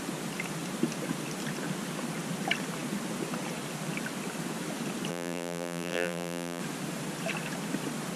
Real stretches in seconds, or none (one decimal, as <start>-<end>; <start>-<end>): 0.0-5.1; 6.6-8.2